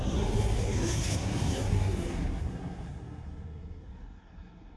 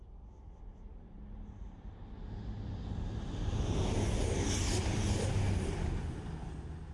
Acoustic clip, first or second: second